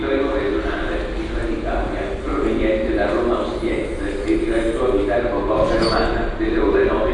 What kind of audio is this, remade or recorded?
recorded